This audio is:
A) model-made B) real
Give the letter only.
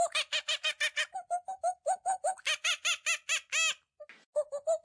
B